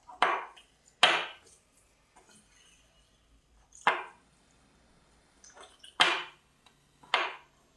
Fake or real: real